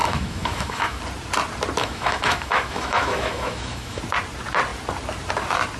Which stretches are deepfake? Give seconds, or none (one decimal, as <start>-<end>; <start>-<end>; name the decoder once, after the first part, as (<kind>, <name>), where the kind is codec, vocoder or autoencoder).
0.0-1.0 (autoencoder, DAC-VAE); 1.8-4.0